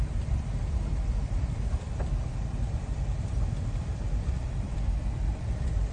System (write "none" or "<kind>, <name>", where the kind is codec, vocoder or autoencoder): vocoder, BigVGAN v2